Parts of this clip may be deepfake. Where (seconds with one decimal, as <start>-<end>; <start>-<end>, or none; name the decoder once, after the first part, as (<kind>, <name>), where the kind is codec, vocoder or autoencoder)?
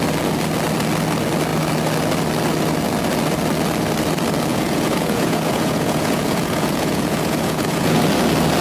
4.5-8.0 (vocoder, Vocos)